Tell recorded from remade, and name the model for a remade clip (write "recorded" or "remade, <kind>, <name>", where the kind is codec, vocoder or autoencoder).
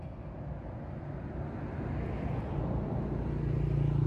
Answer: recorded